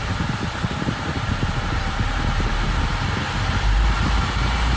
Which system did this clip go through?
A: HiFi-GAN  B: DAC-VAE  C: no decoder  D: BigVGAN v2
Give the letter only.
D